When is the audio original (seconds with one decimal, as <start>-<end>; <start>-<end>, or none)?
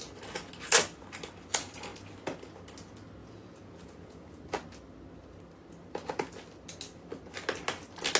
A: 0.0-3.2; 4.4-8.2